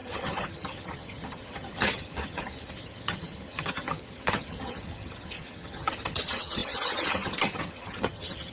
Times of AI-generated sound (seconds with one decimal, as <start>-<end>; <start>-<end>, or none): 0.0-8.5